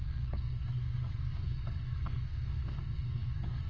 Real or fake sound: fake